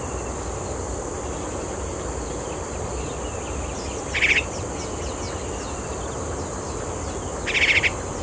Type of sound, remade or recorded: recorded